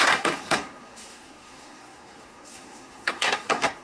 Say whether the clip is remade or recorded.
remade